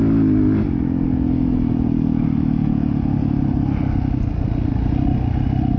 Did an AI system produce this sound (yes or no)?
no